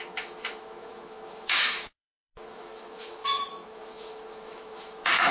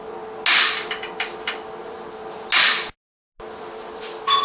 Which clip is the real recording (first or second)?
second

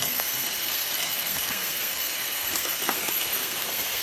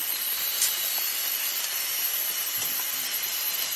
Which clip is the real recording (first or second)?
second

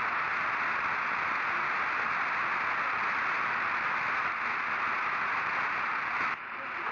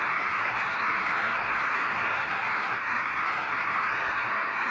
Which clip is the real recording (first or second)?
first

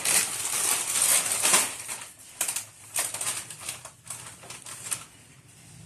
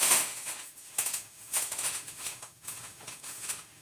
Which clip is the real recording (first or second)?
first